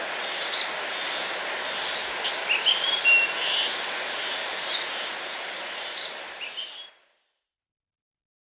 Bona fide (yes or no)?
yes